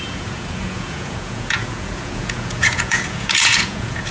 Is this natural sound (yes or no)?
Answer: no